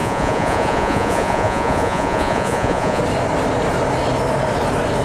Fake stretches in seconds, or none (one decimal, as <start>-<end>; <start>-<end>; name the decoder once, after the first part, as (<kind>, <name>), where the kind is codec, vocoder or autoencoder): 0.0-3.0 (vocoder, Vocos)